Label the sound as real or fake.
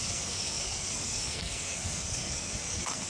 fake